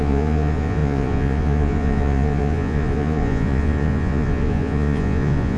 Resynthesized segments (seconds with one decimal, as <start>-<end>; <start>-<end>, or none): 0.0-5.6